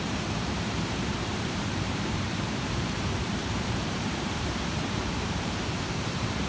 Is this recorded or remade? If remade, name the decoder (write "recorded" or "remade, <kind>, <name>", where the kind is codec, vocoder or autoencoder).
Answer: remade, vocoder, BigVGAN v2